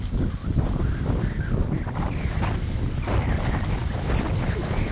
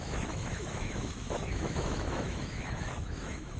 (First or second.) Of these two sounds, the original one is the first